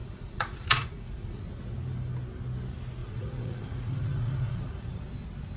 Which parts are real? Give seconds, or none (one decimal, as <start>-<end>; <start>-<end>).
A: 1.4-3.0; 5.0-5.6